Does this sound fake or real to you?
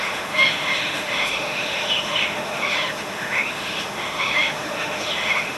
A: fake